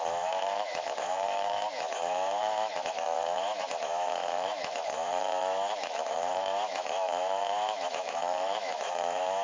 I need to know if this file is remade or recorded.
remade